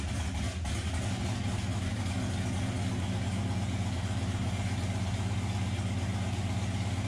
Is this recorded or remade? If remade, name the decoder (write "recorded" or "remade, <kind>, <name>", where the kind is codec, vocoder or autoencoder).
recorded